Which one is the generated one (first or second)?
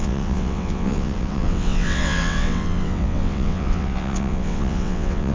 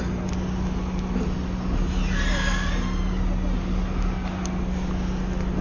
first